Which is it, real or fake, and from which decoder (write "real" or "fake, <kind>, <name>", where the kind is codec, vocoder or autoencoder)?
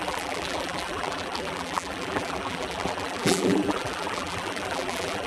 fake, vocoder, BigVGAN v2